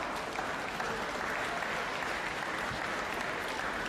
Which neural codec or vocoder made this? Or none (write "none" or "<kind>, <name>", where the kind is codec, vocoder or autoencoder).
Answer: none